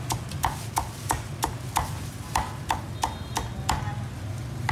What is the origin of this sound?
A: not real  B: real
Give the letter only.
B